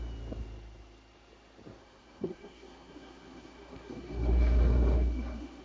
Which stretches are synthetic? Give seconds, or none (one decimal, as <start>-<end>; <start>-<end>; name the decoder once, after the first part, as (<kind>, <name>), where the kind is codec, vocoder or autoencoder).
1.8-5.6 (codec, SNAC)